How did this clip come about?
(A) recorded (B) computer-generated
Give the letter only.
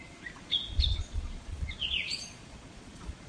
B